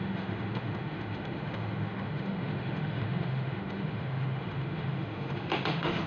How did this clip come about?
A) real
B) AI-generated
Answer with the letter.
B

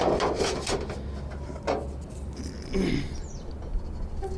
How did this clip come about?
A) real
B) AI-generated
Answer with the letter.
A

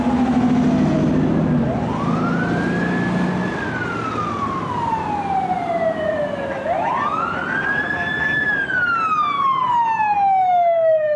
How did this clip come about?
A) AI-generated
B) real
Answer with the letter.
B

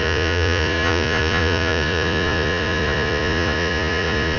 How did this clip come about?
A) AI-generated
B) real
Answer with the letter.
A